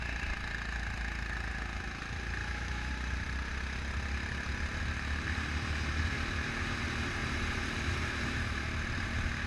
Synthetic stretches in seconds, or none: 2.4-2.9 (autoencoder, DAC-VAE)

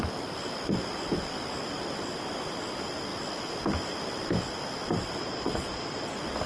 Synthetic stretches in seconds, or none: 5.2-6.1 (vocoder, Vocos)

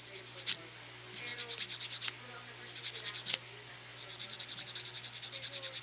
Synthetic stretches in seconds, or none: none

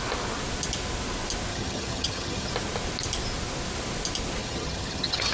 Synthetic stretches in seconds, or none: 1.5-2.5 (vocoder, HiFi-GAN); 4.4-5.3

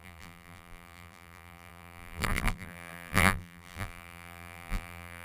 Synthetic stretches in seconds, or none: 0.0-5.2 (vocoder, BigVGAN v2)

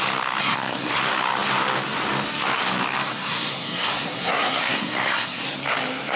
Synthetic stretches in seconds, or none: 0.4-1.0 (codec, SNAC); 3.1-5.4